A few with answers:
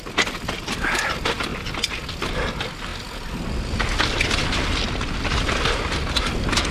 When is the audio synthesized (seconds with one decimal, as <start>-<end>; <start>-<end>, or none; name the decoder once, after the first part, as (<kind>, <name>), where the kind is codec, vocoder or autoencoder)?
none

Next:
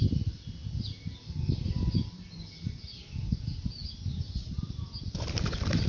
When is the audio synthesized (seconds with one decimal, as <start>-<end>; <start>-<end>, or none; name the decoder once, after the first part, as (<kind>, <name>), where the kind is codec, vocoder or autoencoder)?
0.0-0.6 (vocoder, BigVGAN v2); 2.8-3.8; 5.0-5.9

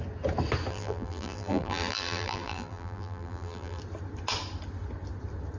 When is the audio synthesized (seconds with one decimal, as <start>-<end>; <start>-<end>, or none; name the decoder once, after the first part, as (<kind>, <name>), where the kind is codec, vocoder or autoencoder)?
0.7-3.8 (vocoder, BigVGAN v2)

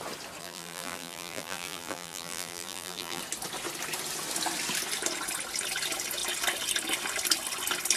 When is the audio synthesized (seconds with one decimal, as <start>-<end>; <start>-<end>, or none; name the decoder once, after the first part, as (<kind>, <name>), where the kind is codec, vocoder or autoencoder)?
0.4-3.2 (vocoder, BigVGAN v2)

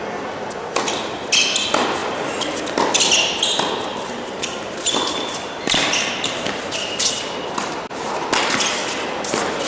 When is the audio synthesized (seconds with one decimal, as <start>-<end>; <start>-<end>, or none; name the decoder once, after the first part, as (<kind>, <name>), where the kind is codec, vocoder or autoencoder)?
3.9-6.6 (vocoder, BigVGAN v2)